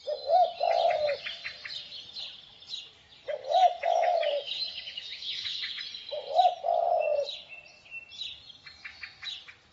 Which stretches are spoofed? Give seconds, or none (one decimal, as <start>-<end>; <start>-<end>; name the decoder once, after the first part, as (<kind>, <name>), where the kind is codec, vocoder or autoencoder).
3.6-5.8 (autoencoder, DAC-VAE)